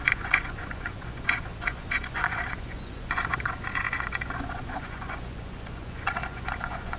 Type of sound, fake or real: fake